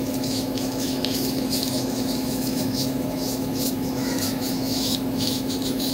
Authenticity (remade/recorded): remade